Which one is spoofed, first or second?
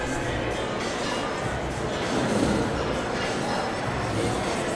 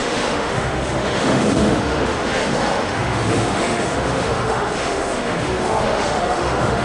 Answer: second